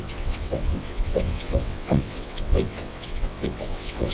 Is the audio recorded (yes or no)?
no